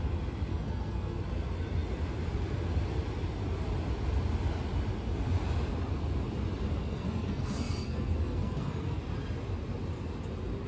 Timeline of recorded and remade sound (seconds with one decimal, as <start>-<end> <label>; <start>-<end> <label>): 0.0-0.5 recorded; 0.5-1.2 remade; 1.2-6.8 recorded; 6.8-9.0 remade; 9.0-10.7 recorded